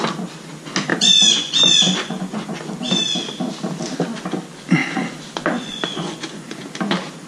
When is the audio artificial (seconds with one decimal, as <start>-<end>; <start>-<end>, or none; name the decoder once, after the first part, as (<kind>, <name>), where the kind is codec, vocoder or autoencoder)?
0.9-2.7 (vocoder, Vocos); 4.8-6.6